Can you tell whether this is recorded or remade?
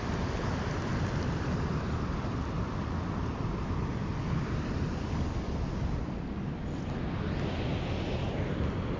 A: recorded